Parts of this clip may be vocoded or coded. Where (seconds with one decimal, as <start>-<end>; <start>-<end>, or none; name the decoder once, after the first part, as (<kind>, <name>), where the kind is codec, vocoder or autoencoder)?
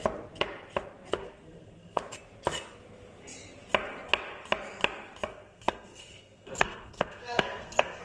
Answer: 1.1-2.0 (codec, SNAC); 5.3-8.0